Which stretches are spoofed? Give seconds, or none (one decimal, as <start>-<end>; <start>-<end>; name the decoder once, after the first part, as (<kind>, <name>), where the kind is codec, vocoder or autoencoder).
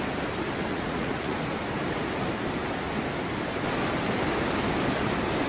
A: 0.7-1.4 (vocoder, Vocos)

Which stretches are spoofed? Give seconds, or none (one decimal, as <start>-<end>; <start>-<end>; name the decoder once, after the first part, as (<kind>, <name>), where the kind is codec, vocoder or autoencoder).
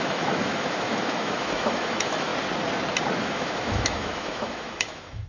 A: 0.0-2.3 (autoencoder, DAC-VAE); 3.2-5.3